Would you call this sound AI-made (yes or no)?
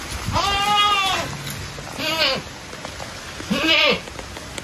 no